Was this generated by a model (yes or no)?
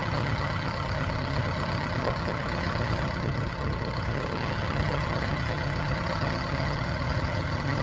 yes